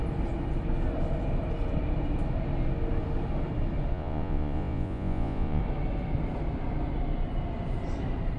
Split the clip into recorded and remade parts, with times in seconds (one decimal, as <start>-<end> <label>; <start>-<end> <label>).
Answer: 0.0-3.9 recorded; 3.9-5.6 remade; 5.6-8.4 recorded